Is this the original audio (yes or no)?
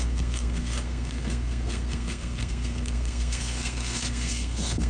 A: no